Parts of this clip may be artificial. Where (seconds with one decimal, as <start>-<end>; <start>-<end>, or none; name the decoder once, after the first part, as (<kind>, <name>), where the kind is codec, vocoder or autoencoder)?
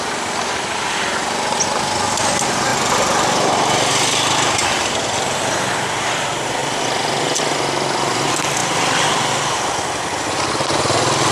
2.7-3.9 (vocoder, BigVGAN v2); 8.6-9.2